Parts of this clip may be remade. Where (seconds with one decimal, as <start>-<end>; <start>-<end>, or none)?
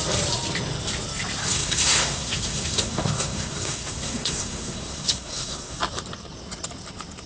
1.4-5.8